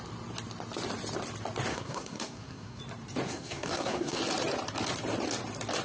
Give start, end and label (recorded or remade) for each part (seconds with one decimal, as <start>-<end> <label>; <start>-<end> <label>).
0.0-1.7 recorded; 1.7-2.8 remade; 2.8-3.3 recorded; 3.3-4.2 remade; 4.2-5.8 recorded